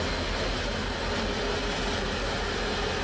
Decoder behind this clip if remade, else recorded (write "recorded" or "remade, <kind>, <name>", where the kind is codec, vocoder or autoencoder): recorded